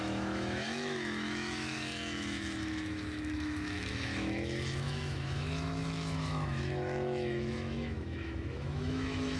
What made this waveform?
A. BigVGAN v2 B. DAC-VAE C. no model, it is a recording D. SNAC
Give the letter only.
B